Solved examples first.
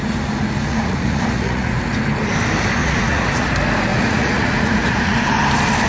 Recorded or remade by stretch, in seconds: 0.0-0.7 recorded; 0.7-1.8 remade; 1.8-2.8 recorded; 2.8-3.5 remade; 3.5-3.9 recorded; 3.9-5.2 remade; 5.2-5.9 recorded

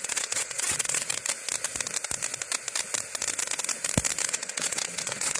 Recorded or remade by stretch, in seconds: 0.0-1.1 remade; 1.1-4.3 recorded; 4.3-5.4 remade

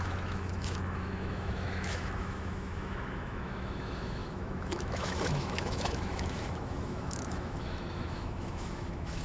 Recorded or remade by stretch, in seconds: 0.0-9.2 remade

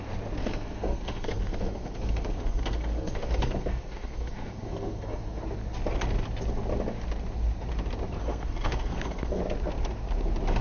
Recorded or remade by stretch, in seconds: 0.0-0.4 recorded; 0.4-5.4 remade; 5.4-8.2 recorded; 8.2-9.4 remade; 9.4-10.6 recorded

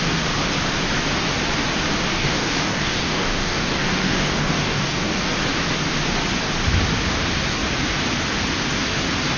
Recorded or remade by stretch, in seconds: 0.0-2.1 recorded; 2.1-5.1 remade; 5.1-9.4 recorded

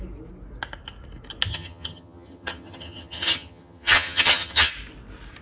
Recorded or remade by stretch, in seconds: 0.0-1.5 recorded; 1.5-4.7 remade; 4.7-5.4 recorded

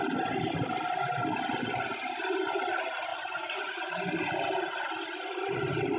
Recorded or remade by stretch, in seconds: 0.0-3.1 recorded; 3.1-4.0 remade; 4.0-6.0 recorded

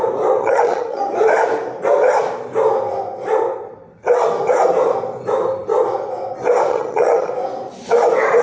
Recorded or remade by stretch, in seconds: 0.0-0.4 recorded; 0.4-1.1 remade; 1.1-6.7 recorded; 6.7-7.3 remade; 7.3-8.4 recorded